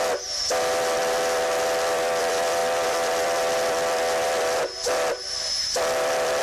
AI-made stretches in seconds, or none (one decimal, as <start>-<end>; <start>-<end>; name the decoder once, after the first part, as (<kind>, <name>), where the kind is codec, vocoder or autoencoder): 0.0-6.4 (vocoder, BigVGAN v2)